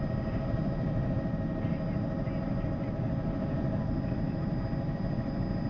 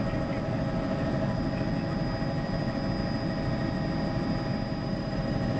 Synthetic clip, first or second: first